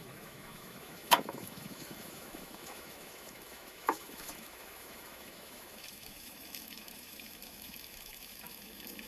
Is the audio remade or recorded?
remade